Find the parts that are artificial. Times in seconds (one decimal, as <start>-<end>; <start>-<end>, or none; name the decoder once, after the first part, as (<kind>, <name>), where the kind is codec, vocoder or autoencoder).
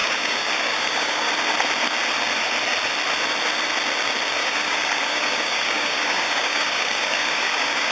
0.0-1.3 (codec, DAC); 4.4-7.9